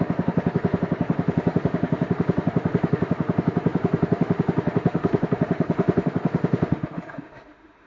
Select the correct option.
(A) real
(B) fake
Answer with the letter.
B